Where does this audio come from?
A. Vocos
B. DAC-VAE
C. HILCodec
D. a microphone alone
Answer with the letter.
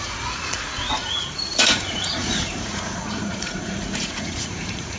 A